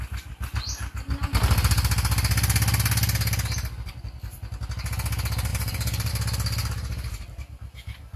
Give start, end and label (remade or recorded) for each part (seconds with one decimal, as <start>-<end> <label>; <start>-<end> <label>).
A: 0.0-5.5 recorded; 5.5-6.1 remade; 6.1-6.6 recorded; 6.6-7.2 remade; 7.2-8.2 recorded